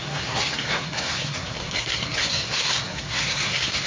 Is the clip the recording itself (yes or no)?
no